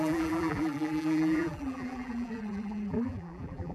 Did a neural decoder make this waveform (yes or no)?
yes